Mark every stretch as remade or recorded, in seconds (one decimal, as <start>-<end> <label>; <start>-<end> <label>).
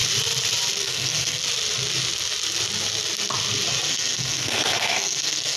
0.0-0.8 recorded; 0.8-1.4 remade; 1.4-3.9 recorded; 3.9-5.6 remade